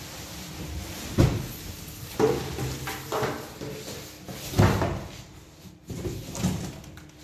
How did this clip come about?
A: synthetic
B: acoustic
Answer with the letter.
B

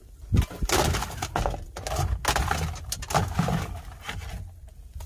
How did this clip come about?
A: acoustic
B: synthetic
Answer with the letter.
A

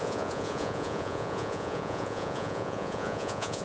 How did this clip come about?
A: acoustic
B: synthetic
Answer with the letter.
B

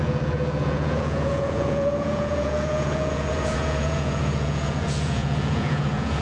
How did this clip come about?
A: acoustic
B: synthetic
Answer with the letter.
B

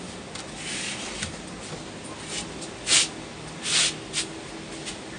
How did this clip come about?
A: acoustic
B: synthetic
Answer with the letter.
A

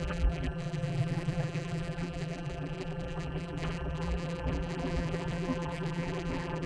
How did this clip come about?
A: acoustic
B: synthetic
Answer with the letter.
B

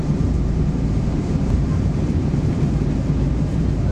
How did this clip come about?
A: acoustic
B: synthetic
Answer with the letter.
B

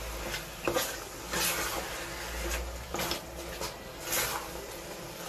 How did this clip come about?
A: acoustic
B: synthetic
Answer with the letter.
A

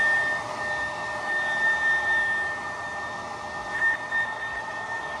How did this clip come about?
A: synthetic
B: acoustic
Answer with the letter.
B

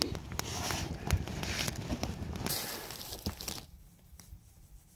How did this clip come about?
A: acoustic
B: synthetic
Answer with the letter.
A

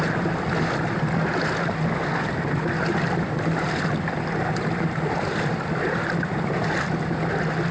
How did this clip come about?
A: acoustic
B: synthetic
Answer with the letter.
A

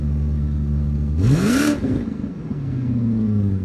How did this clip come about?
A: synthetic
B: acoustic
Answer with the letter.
A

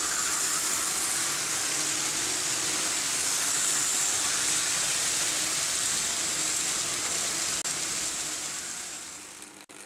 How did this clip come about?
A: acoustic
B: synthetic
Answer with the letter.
A